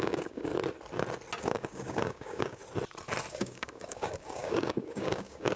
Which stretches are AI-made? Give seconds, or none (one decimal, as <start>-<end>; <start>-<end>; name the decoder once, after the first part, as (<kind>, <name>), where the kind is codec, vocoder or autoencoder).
0.0-0.5 (codec, DAC); 1.4-2.6; 3.3-5.6